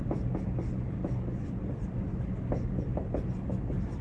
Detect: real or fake real